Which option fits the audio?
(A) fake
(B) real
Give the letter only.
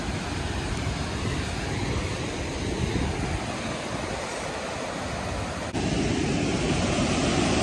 B